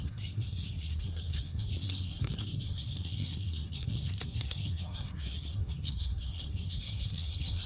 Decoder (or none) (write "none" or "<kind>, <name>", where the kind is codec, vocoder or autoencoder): codec, SNAC